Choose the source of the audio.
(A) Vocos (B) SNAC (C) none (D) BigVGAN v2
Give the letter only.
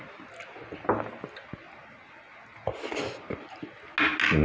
C